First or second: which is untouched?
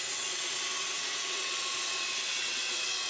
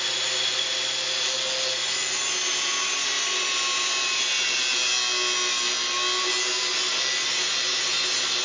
second